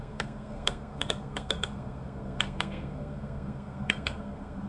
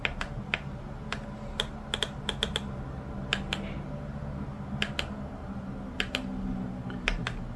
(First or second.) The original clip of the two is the second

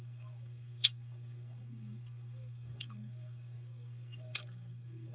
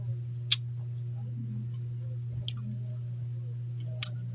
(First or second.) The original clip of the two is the second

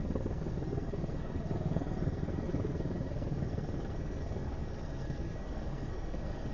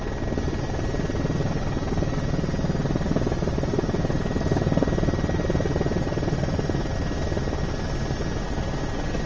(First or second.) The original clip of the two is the second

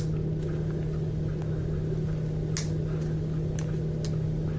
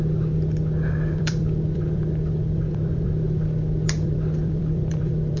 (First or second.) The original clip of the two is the first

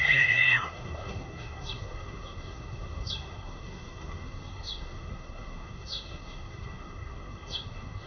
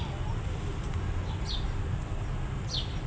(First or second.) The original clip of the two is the second